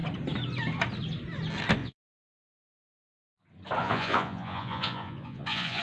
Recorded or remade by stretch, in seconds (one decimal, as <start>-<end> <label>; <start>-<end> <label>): 0.0-1.8 recorded; 1.8-2.8 remade; 2.8-3.8 recorded; 3.8-5.8 remade